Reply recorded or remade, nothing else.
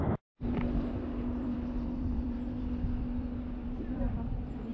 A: remade